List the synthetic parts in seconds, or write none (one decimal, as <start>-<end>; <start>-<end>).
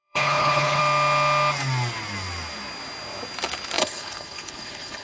0.0-0.8; 3.8-5.0